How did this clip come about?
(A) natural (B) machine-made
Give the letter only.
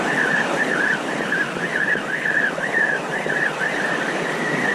A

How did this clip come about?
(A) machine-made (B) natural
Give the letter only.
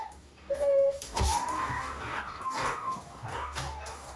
A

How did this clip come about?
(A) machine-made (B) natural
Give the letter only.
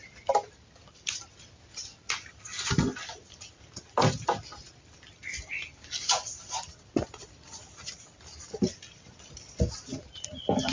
B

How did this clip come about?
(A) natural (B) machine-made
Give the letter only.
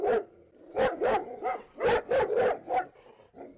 B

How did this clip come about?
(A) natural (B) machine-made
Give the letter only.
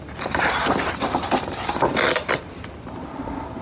A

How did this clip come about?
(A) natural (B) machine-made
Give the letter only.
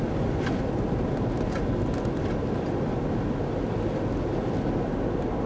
A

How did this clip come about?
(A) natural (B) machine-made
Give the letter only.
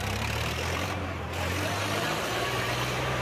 B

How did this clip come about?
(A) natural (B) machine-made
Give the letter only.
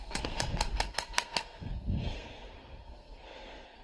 B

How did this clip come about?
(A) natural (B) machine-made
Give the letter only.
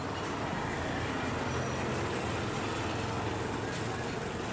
A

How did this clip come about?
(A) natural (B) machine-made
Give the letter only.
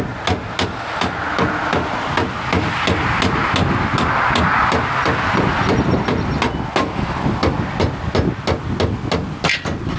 A